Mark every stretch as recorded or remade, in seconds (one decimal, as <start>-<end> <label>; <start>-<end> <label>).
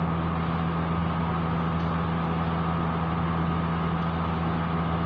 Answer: 0.0-5.1 recorded